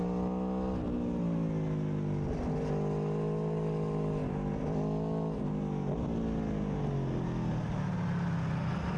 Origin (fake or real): real